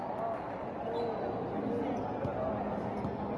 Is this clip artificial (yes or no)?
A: no